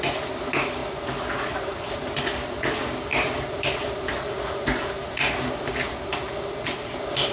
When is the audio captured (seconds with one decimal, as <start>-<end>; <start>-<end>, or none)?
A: 0.8-2.2

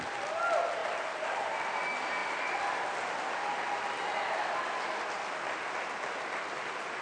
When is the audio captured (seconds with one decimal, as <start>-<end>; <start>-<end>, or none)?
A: 0.0-0.8; 1.6-7.0